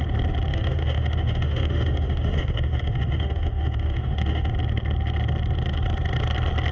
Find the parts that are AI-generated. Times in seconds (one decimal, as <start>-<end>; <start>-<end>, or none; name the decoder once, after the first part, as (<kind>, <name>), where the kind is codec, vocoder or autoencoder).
0.5-4.5 (autoencoder, DAC-VAE)